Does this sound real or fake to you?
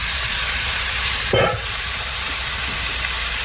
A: fake